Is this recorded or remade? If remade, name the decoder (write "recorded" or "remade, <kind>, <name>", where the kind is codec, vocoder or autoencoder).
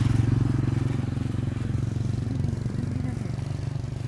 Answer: recorded